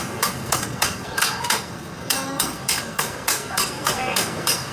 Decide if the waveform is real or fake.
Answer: fake